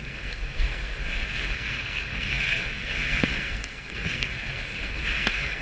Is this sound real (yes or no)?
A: no